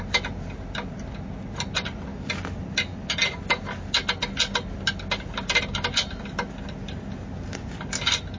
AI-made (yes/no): no